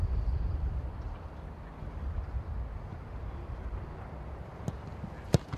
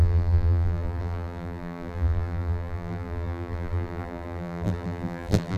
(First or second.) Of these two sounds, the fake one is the second